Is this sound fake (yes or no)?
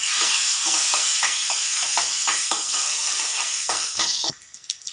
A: yes